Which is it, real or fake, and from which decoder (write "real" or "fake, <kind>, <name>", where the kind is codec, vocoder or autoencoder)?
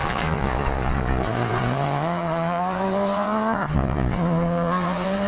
fake, vocoder, Vocos